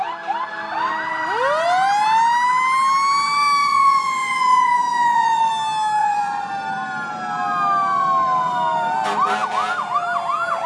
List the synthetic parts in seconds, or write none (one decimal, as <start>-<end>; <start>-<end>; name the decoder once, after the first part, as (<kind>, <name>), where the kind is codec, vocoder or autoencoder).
3.6-5.5 (vocoder, Vocos); 6.0-6.5